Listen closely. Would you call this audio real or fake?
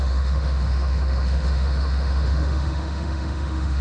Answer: fake